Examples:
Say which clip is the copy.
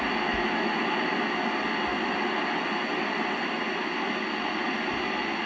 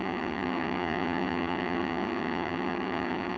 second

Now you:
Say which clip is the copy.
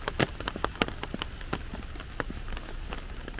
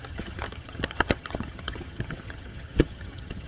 second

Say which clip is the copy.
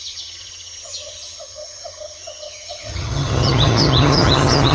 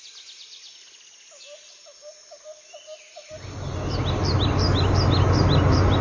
first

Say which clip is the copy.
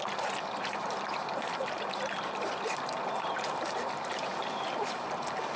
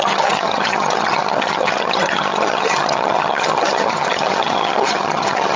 second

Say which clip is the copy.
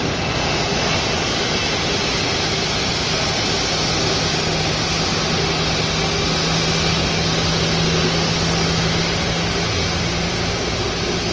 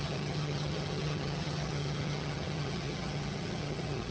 second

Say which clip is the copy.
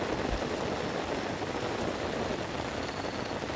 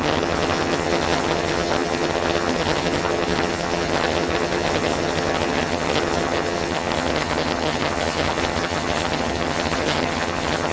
second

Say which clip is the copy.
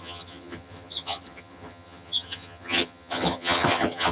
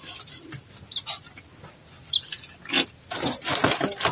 first